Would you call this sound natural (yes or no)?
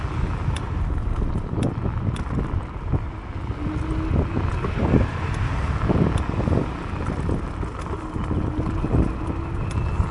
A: yes